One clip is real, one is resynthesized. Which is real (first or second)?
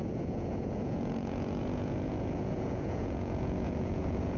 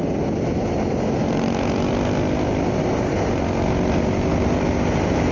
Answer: second